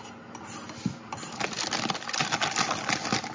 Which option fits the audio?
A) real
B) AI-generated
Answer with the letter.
A